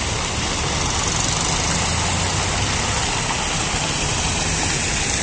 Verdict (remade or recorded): recorded